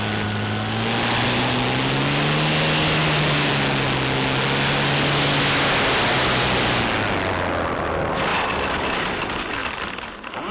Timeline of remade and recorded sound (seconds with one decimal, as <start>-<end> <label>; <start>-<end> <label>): 0.0-10.5 recorded